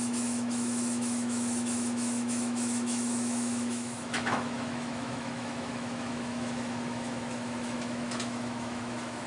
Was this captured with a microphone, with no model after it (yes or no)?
no